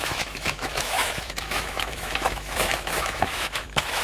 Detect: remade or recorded remade